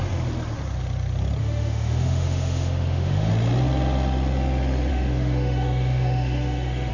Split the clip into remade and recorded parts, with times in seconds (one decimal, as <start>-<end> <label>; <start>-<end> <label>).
0.0-1.4 recorded; 1.4-3.3 remade; 3.3-4.9 recorded; 4.9-6.9 remade